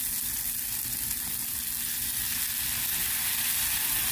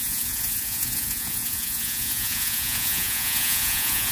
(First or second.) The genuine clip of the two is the first